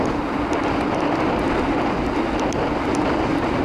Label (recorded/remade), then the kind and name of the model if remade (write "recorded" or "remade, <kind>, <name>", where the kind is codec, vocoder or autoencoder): recorded